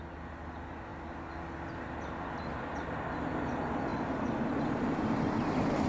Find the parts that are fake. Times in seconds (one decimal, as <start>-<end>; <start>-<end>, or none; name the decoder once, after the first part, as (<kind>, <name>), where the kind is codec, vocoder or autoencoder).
none